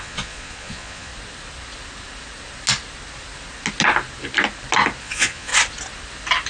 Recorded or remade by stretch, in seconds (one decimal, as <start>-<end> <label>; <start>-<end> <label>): 0.0-1.1 remade; 1.1-5.0 recorded; 5.0-5.5 remade; 5.5-6.5 recorded